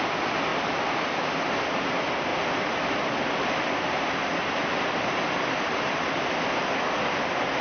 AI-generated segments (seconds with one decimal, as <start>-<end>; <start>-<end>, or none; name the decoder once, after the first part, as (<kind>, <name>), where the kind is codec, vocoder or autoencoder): none